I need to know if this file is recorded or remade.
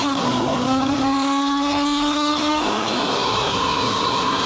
remade